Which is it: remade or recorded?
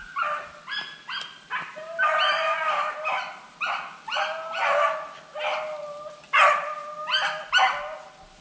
recorded